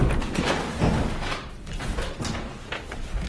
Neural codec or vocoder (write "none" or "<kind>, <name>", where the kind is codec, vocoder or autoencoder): none